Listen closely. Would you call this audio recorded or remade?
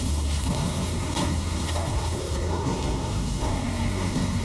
remade